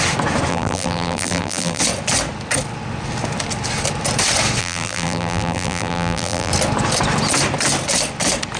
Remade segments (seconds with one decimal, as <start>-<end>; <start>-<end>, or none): 0.5-1.8; 4.6-6.5